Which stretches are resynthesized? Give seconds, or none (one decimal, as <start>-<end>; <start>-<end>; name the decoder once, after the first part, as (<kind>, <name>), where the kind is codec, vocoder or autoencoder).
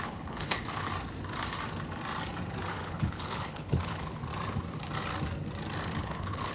0.0-0.9 (codec, HILCodec); 2.7-4.3; 6.0-6.5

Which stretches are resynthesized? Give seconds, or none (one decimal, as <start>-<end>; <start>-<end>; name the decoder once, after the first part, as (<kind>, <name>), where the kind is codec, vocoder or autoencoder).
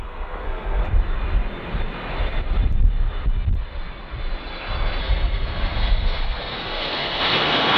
0.0-0.8 (codec, SNAC); 5.0-7.8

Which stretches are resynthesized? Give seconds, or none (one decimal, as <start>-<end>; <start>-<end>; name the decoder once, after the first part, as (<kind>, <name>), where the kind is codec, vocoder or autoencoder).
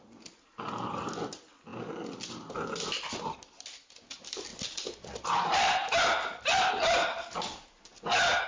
4.5-8.0 (vocoder, BigVGAN v2)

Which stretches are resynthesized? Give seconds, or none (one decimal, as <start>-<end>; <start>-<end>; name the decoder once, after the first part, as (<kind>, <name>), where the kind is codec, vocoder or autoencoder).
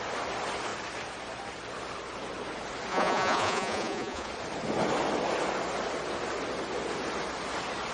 2.9-4.3 (vocoder, Vocos)